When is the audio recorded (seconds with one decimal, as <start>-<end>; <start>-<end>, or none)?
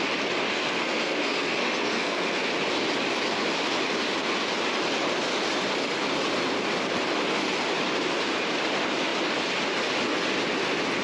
0.0-0.5; 2.5-11.0